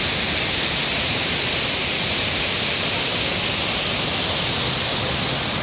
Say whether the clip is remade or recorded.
recorded